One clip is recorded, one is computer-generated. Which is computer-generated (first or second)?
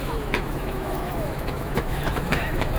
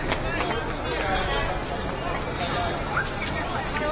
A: first